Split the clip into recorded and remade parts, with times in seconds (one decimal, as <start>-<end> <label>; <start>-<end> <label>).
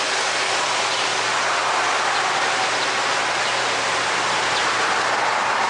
0.0-5.7 recorded